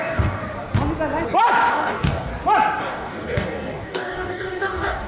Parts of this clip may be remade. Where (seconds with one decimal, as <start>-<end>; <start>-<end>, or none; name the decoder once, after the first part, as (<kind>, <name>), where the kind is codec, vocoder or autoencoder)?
0.0-0.4 (codec, DAC); 1.7-2.3; 2.8-5.1